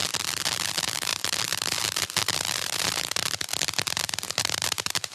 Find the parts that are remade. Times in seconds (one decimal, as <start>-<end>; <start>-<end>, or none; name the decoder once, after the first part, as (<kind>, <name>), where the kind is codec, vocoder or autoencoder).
0.5-3.5 (vocoder, BigVGAN v2); 4.3-5.1